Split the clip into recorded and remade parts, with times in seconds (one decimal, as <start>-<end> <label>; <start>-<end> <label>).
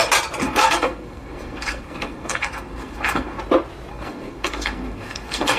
0.0-0.4 recorded; 0.4-3.4 remade; 3.4-3.9 recorded; 3.9-5.6 remade